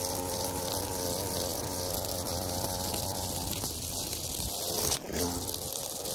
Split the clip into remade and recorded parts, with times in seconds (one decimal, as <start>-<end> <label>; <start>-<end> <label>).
0.0-6.1 recorded